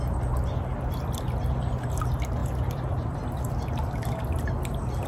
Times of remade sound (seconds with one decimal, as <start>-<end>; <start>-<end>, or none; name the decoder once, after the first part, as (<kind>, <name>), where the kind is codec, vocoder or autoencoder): 2.4-3.4 (vocoder, BigVGAN v2)